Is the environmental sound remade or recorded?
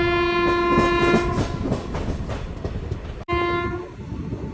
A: recorded